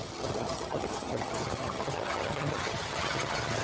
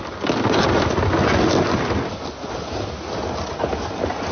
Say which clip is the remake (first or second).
first